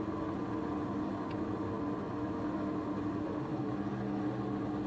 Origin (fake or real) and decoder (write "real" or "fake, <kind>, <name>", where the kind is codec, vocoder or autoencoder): real